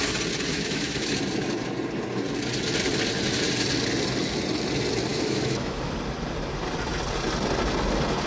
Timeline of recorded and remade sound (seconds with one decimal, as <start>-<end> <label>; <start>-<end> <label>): 0.0-0.5 recorded; 0.5-1.2 remade; 1.2-5.1 recorded; 5.1-5.9 remade; 5.9-8.3 recorded